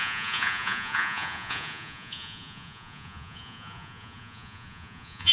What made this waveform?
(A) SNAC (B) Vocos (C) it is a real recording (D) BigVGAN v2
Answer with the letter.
B